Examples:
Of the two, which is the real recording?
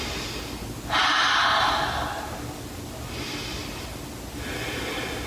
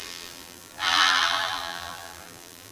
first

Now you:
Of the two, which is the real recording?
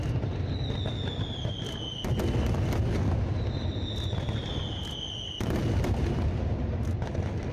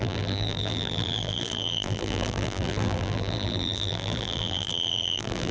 first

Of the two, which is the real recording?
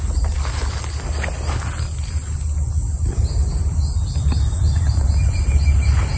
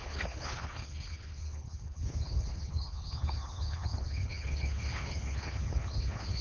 first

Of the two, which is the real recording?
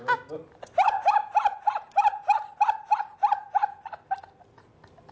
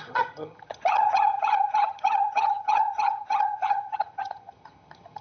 first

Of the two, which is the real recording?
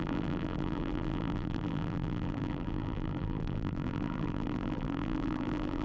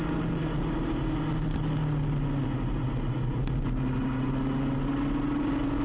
second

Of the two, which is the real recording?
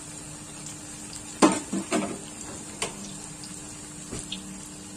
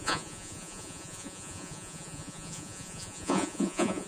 first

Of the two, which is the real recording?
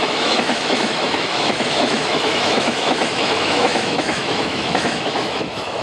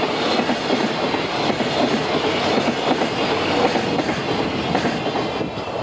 second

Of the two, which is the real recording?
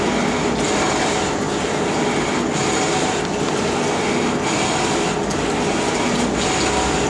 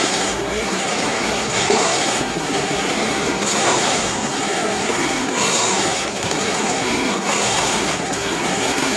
first